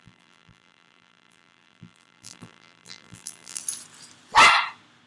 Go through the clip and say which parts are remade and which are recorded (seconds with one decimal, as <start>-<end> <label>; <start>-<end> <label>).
0.0-3.6 remade; 3.6-5.1 recorded